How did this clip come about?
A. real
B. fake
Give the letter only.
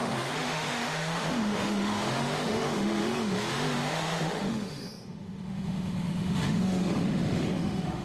B